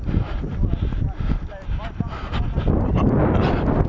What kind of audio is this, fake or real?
real